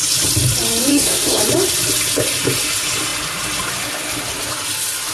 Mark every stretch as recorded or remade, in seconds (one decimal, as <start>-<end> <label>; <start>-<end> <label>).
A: 0.0-0.9 recorded; 0.9-1.4 remade; 1.4-5.1 recorded